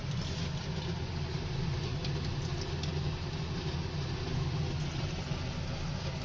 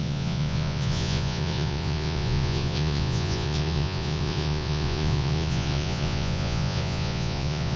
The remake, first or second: second